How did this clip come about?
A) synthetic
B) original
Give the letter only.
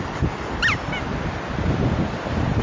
B